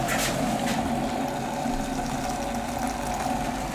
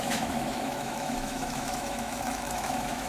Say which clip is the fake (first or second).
second